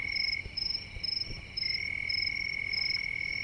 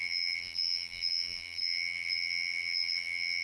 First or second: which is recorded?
first